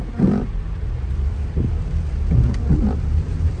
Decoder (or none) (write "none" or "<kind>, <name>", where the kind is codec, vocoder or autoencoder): none